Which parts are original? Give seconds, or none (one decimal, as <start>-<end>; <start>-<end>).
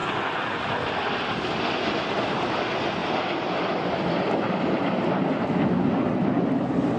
0.7-7.0